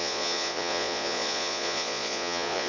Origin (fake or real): fake